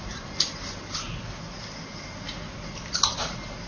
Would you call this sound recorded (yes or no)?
yes